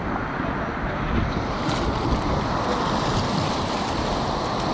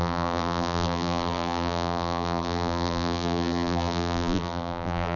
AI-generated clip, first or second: second